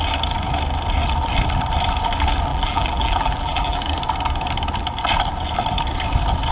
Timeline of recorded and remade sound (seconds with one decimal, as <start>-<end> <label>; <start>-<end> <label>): 0.0-2.5 recorded; 2.5-3.8 remade; 3.8-6.5 recorded